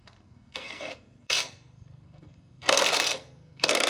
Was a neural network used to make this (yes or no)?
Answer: yes